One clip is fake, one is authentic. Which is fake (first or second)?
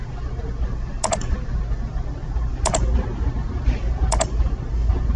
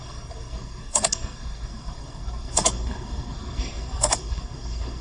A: second